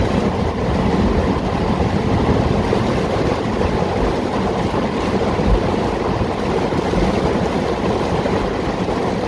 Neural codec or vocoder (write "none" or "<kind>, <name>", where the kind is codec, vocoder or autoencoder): none